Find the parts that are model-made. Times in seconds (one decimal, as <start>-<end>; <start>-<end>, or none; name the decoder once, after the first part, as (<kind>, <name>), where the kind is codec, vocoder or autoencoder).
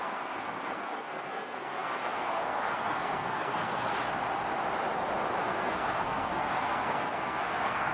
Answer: 0.0-3.9 (codec, SNAC); 5.4-7.9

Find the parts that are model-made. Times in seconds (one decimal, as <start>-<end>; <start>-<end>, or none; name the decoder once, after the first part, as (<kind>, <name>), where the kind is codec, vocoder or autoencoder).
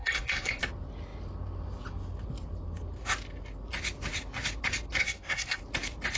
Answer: 0.0-0.6 (codec, SNAC); 5.0-5.6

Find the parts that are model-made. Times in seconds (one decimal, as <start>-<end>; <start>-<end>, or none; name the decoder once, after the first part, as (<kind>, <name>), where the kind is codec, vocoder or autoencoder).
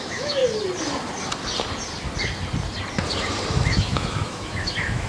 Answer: 0.0-0.4 (autoencoder, DAC-VAE); 3.5-5.1